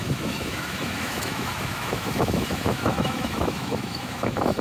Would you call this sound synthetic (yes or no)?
yes